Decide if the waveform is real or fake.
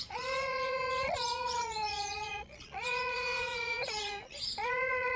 fake